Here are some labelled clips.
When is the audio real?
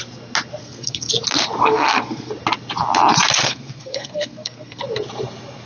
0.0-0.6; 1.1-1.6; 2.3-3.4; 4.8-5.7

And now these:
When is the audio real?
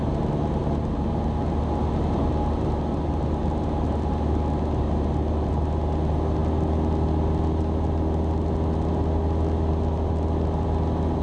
0.0-11.2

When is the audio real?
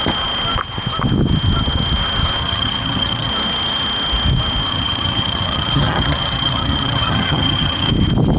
0.0-2.4; 3.3-4.7; 7.9-8.4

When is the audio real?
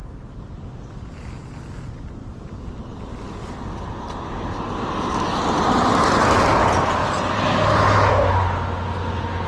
0.0-9.5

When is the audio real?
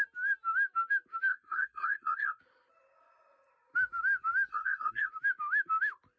0.0-1.3; 2.4-4.5; 5.1-6.2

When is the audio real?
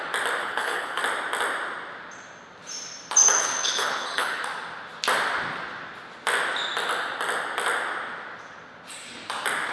0.0-0.4; 1.0-3.4; 4.4-9.7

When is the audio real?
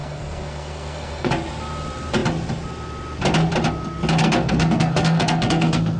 1.3-4.2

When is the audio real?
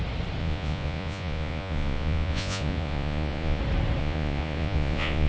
0.0-0.4; 3.6-4.0